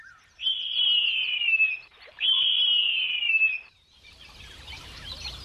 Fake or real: fake